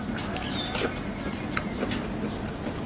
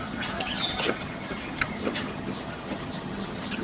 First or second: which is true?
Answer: first